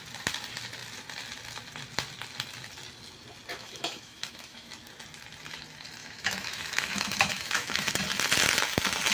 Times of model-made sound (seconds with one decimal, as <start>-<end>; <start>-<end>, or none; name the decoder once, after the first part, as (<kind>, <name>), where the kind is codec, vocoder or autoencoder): 3.5-4.7 (autoencoder, DAC-VAE); 6.0-8.0